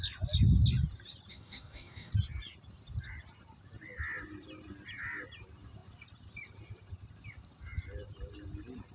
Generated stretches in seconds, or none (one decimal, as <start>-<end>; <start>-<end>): 1.3-2.1